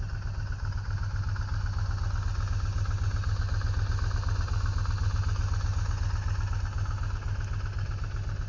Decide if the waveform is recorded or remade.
recorded